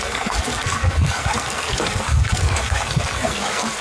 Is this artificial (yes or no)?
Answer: yes